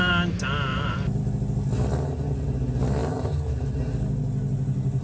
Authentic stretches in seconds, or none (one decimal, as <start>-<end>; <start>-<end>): 0.0-0.7; 1.2-5.0